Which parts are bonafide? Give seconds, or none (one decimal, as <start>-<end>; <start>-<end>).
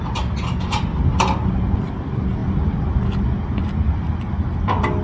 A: 0.0-5.0